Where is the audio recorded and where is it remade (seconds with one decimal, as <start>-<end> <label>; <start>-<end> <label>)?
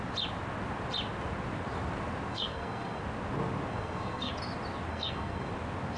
0.0-2.3 recorded; 2.3-3.0 remade; 3.0-3.7 recorded; 3.7-4.3 remade; 4.3-4.9 recorded; 4.9-5.5 remade; 5.5-6.0 recorded